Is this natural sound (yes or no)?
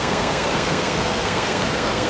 no